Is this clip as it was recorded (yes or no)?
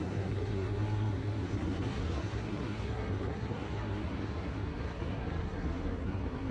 no